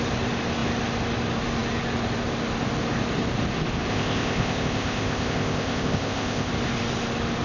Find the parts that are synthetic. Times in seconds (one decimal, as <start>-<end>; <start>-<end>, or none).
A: 3.9-6.5